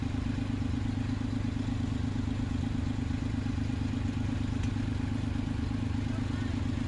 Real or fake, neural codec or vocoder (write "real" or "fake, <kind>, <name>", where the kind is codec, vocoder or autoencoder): real